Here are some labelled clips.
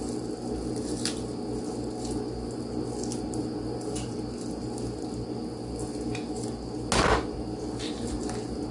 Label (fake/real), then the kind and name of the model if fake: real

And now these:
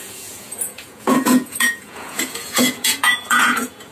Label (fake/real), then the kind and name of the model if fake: fake, vocoder, Vocos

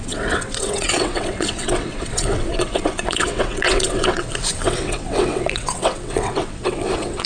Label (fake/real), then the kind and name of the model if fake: fake, vocoder, WaveNeXt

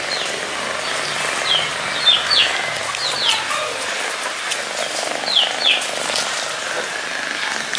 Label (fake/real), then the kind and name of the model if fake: real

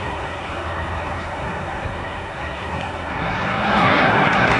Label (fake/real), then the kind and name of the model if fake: fake, codec, SNAC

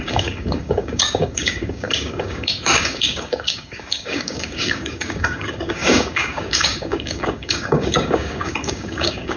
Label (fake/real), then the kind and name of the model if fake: fake, codec, DAC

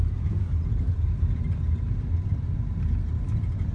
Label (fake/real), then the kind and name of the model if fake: real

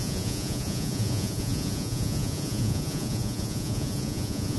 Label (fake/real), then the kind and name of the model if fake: fake, vocoder, Vocos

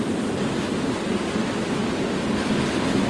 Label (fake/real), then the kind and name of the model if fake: real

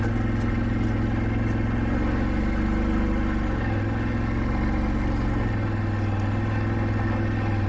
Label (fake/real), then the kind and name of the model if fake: real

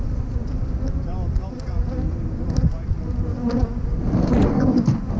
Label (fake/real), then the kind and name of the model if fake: real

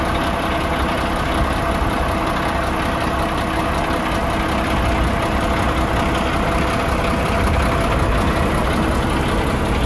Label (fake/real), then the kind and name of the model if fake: real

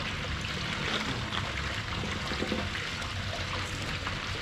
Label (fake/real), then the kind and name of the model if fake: real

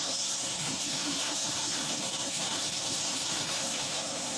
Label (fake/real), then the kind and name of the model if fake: fake, codec, SNAC